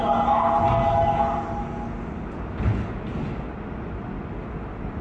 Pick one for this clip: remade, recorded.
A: recorded